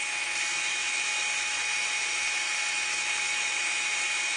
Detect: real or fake fake